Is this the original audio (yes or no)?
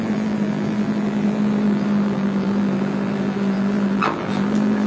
no